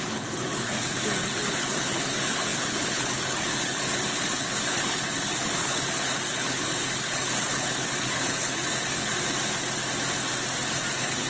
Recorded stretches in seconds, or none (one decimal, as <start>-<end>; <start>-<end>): 9.1-10.9